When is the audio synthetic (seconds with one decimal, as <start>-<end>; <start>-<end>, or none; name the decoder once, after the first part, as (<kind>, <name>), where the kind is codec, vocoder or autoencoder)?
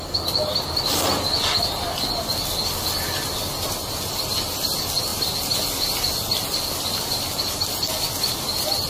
none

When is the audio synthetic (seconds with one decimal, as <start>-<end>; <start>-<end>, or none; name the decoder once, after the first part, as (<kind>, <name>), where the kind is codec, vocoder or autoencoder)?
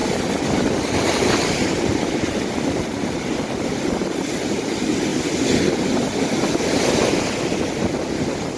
5.1-6.6 (vocoder, BigVGAN v2)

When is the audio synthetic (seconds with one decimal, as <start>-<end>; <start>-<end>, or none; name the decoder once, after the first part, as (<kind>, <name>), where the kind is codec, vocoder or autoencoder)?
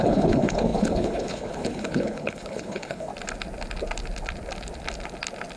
0.0-3.1 (codec, HILCodec)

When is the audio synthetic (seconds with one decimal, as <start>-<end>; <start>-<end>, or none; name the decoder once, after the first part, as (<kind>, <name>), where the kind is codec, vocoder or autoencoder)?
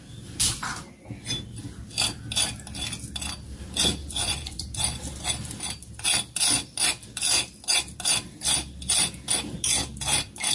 4.0-4.8 (vocoder, Vocos)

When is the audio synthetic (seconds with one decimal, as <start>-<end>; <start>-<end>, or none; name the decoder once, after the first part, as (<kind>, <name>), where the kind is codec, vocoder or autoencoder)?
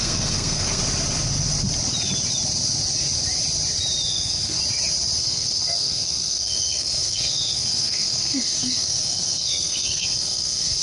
0.0-0.8 (codec, SNAC); 4.1-4.6; 5.2-10.8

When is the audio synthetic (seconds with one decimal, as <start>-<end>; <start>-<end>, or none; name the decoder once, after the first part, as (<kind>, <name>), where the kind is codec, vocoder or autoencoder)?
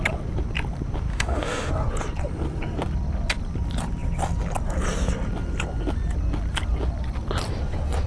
1.1-1.7 (autoencoder, DAC-VAE)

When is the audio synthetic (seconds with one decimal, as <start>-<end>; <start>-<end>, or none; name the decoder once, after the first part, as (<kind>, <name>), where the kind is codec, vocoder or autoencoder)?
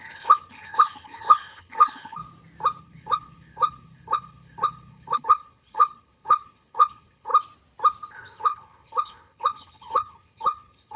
0.0-2.2 (codec, HILCodec); 2.8-7.3; 8.1-11.0